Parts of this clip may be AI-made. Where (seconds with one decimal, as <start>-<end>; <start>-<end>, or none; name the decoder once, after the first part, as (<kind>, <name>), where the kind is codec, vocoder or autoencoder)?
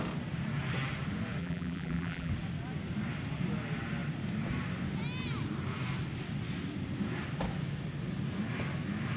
1.4-2.3 (vocoder, BigVGAN v2)